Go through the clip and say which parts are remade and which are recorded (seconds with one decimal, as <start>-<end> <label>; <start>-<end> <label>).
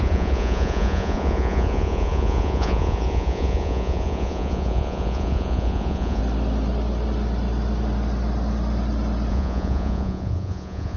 0.0-6.2 remade; 6.2-9.3 recorded; 9.3-11.0 remade